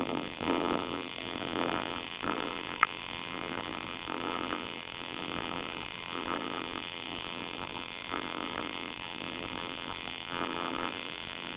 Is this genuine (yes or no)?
no